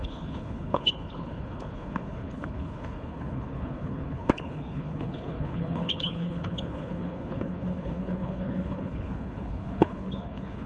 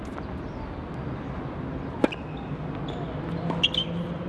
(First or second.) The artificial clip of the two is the first